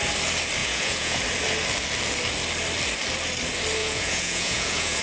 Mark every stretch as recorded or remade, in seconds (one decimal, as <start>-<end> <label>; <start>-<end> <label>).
0.0-0.6 recorded; 0.6-1.2 remade; 1.2-3.8 recorded; 3.8-5.0 remade